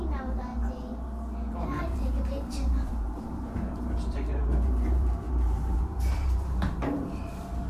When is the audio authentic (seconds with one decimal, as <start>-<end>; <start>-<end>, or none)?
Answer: 0.5-1.5